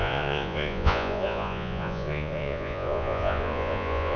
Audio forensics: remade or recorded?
remade